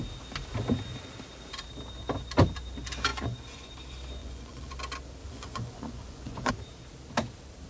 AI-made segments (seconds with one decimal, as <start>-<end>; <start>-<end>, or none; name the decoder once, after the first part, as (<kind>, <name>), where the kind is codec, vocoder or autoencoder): 3.1-3.7 (vocoder, Vocos); 4.2-4.7; 5.2-6.5